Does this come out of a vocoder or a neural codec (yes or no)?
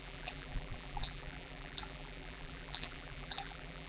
yes